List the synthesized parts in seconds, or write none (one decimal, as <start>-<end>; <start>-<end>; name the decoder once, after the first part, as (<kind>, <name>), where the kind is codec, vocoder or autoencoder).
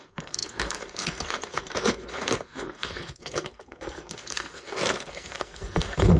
0.0-6.2 (codec, SNAC)